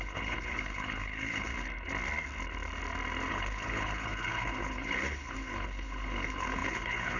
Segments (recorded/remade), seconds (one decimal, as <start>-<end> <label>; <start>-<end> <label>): 0.0-1.5 remade; 1.5-3.3 recorded; 3.3-7.2 remade